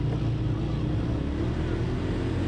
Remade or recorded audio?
recorded